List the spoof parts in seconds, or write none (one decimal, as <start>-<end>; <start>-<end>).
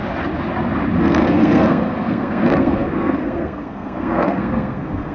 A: 1.0-5.1